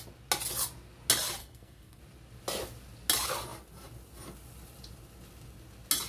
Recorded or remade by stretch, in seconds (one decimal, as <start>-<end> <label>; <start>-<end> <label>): 0.0-1.4 recorded; 1.4-2.0 remade; 2.0-6.1 recorded